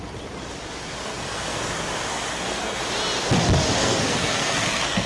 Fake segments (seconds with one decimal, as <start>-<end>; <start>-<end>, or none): 1.1-1.7; 2.1-2.8; 3.8-5.1